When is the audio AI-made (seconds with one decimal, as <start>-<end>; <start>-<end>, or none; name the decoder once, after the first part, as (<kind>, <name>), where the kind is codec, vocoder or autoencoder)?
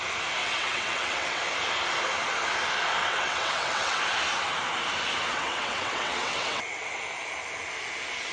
0.4-1.4 (vocoder, WaveNeXt); 3.0-4.0; 5.3-7.0